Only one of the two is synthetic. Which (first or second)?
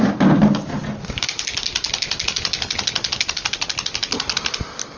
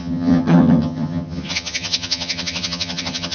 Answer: second